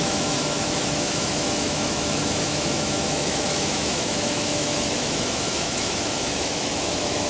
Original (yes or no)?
no